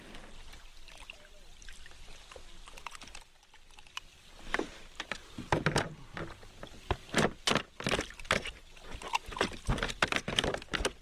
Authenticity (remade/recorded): recorded